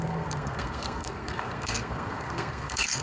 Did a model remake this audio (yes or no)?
yes